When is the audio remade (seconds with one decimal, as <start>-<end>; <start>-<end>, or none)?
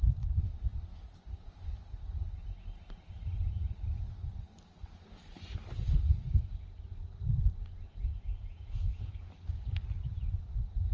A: 8.1-9.3